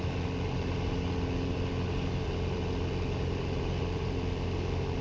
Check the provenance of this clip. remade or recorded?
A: recorded